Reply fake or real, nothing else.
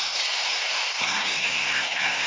fake